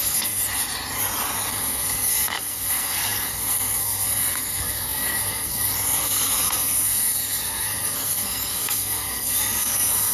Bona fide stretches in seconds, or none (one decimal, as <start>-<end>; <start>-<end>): 0.4-1.5